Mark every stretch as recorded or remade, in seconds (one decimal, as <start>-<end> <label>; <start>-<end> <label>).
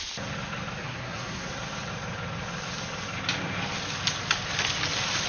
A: 0.0-0.8 recorded; 0.8-1.5 remade; 1.5-5.3 recorded